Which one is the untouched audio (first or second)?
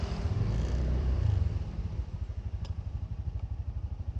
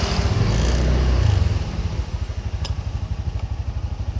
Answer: second